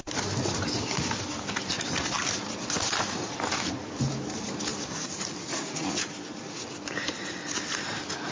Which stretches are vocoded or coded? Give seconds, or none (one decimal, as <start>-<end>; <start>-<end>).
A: none